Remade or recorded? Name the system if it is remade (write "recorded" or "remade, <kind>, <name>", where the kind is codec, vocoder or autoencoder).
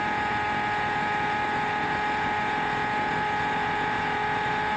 recorded